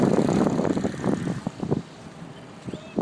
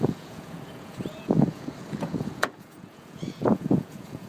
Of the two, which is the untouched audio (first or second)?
first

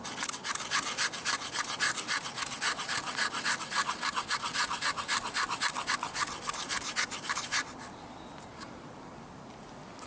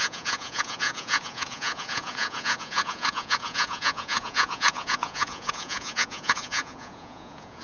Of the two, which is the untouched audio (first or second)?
first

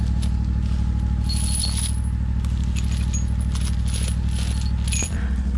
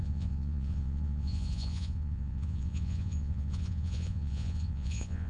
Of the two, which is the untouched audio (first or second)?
first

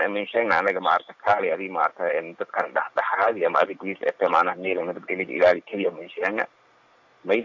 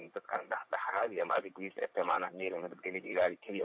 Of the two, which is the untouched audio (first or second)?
first